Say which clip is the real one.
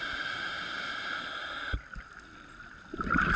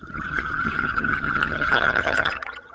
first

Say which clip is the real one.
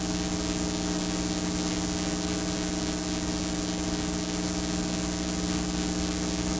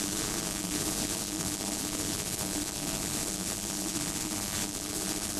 first